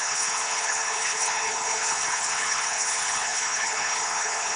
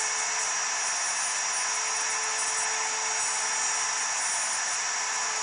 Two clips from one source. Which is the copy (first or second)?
first